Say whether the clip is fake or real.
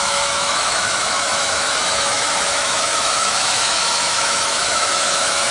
fake